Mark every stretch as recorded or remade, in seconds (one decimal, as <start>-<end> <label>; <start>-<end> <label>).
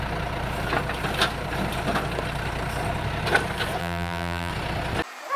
0.0-3.8 recorded; 3.8-4.5 remade; 4.5-5.4 recorded